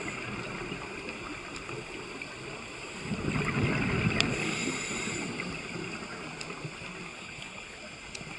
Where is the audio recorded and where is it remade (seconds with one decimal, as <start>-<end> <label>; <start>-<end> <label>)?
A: 0.0-7.1 recorded; 7.1-7.8 remade; 7.8-8.4 recorded